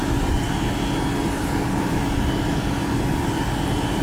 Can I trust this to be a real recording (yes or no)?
yes